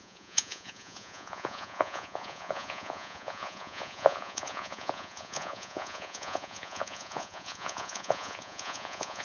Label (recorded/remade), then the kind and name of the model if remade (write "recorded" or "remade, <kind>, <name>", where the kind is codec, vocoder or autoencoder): remade, vocoder, Vocos